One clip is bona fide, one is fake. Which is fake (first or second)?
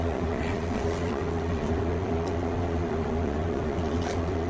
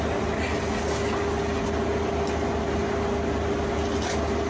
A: first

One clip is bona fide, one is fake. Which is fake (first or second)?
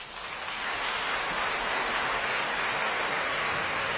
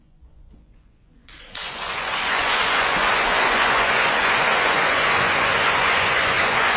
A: second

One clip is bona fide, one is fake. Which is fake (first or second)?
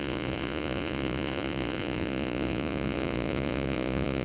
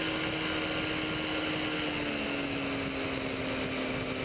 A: first